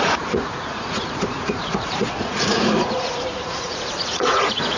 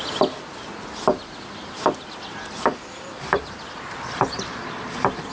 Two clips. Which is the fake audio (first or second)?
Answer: first